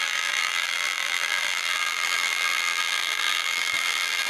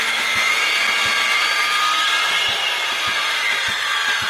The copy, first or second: first